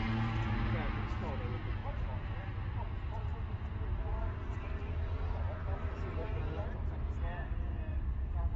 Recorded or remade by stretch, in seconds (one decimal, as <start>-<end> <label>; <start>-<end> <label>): 0.0-1.8 recorded; 1.8-6.9 remade; 6.9-7.9 recorded; 7.9-8.6 remade